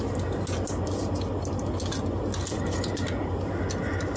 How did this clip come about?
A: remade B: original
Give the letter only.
B